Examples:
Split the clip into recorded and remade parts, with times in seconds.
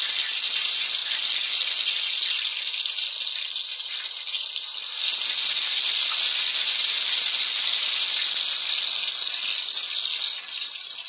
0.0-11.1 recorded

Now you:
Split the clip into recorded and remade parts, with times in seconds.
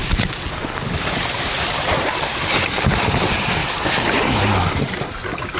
0.0-5.6 recorded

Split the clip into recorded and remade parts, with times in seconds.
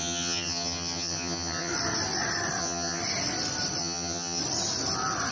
0.0-1.7 remade; 1.7-2.6 recorded; 2.6-3.0 remade; 3.0-3.8 recorded; 3.8-4.4 remade; 4.4-5.3 recorded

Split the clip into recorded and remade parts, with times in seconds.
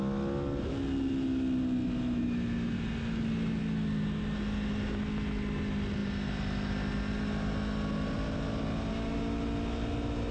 0.0-10.3 recorded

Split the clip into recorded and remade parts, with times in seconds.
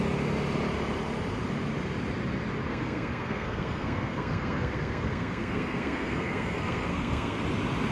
0.0-2.7 recorded; 2.7-7.4 remade; 7.4-7.9 recorded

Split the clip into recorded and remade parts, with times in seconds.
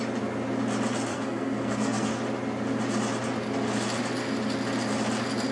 0.0-1.1 recorded; 1.1-2.1 remade; 2.1-5.5 recorded